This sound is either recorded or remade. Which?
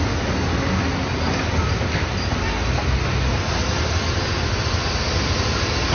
recorded